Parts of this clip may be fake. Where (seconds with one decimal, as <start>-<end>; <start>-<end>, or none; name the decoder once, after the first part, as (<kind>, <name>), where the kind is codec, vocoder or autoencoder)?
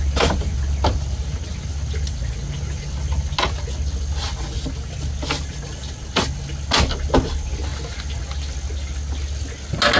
none